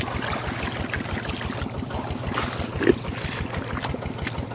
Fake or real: real